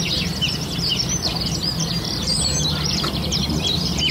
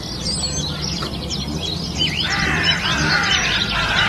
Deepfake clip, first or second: first